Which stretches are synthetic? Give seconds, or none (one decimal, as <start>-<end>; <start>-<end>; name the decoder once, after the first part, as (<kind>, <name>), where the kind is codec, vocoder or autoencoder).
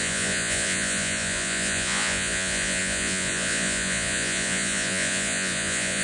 0.0-6.0 (vocoder, Vocos)